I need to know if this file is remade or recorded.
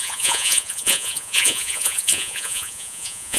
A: remade